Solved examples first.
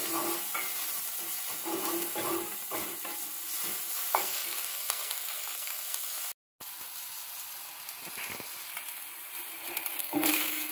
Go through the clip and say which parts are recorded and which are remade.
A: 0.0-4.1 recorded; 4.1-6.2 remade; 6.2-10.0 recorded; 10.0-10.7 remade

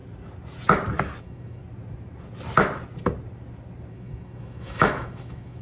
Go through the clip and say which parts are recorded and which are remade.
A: 0.0-1.2 recorded; 1.2-1.6 remade; 1.6-3.9 recorded; 3.9-5.6 remade

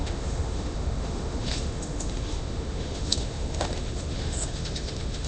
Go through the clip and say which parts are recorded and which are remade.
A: 0.0-5.3 remade

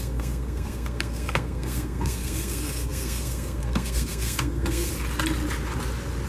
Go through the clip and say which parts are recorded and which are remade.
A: 0.0-4.9 remade; 4.9-6.3 recorded